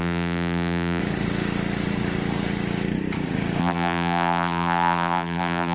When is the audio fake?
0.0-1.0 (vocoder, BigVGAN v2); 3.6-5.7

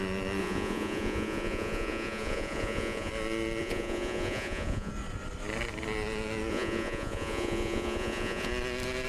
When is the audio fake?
0.4-3.1 (vocoder, Vocos); 3.6-4.9; 6.5-8.5

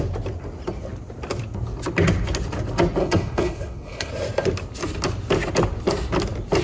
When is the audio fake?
3.0-4.1 (codec, HILCodec)